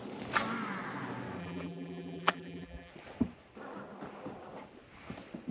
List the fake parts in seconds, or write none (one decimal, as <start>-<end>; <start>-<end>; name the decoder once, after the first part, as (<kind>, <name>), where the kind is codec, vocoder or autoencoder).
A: 1.4-2.9 (vocoder, BigVGAN v2)